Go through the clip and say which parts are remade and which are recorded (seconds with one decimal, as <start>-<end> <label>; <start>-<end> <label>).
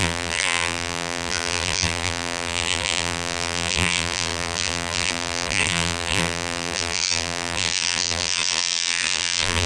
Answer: 0.0-9.7 remade